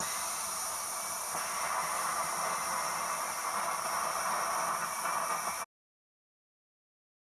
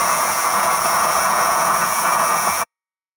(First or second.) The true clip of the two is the first